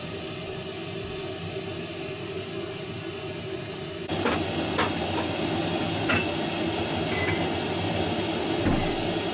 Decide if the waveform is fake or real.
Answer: real